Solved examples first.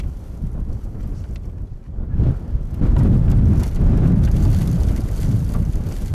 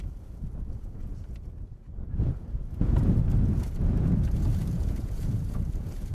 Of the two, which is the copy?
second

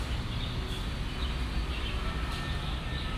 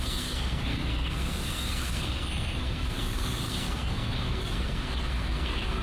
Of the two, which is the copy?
second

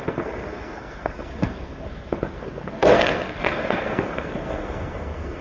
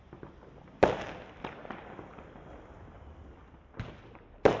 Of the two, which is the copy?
first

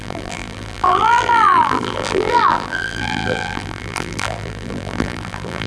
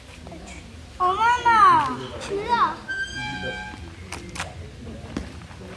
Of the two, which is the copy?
first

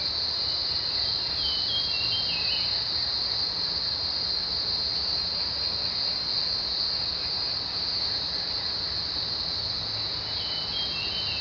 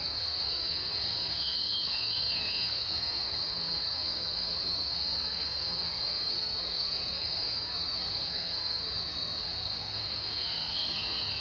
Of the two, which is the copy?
second